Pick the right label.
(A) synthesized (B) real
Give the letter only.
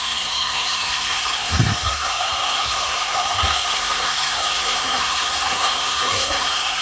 A